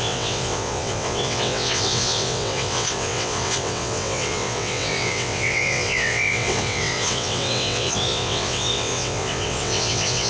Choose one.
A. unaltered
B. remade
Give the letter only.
B